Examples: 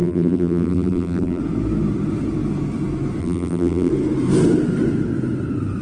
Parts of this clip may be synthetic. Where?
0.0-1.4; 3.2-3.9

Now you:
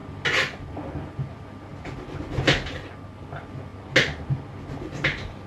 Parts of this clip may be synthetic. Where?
none